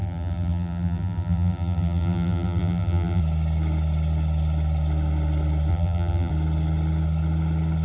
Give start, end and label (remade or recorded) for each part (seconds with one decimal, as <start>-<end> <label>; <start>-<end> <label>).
0.0-3.2 remade; 3.2-5.7 recorded; 5.7-6.3 remade; 6.3-7.8 recorded